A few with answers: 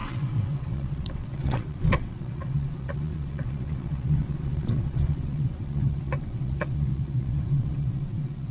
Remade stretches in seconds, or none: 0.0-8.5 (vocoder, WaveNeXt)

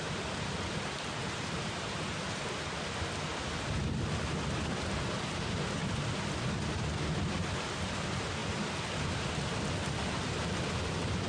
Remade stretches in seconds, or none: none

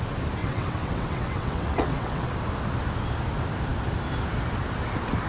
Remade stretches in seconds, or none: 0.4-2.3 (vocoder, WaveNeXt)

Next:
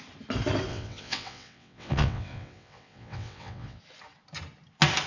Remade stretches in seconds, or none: 0.7-3.8 (vocoder, WaveNeXt)

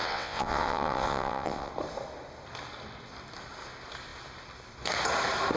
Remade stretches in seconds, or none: 0.0-1.7 (vocoder, WaveNeXt)

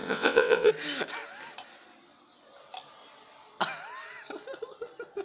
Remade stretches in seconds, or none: 0.0-0.7 (vocoder, WaveNeXt)